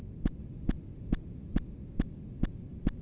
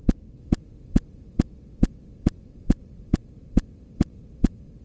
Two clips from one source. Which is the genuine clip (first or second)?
first